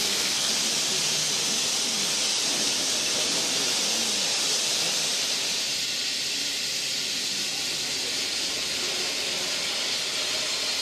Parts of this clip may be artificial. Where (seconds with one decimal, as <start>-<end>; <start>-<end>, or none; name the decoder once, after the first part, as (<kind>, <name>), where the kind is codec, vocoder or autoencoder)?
0.0-0.5 (codec, SNAC)